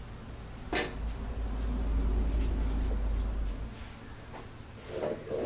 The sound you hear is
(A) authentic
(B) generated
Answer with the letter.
A